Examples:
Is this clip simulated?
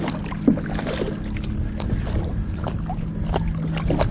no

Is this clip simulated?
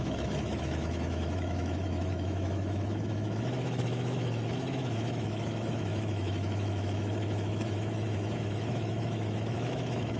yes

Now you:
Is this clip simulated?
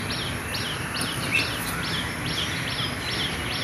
no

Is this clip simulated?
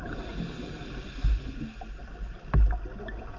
no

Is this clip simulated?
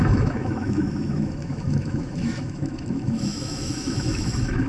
yes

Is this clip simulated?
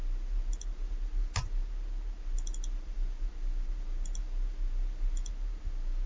no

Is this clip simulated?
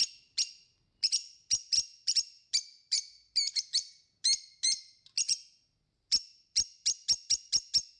no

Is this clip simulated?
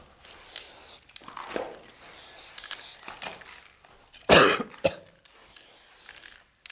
no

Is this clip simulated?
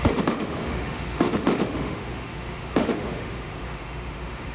yes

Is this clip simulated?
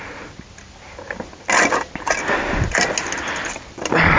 no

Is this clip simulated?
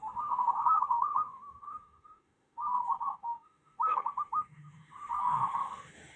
yes